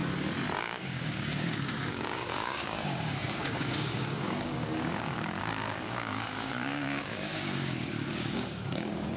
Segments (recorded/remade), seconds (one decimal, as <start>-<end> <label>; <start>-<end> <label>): 0.0-0.6 recorded; 0.6-9.2 remade